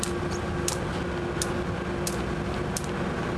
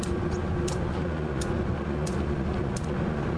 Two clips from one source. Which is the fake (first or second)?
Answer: second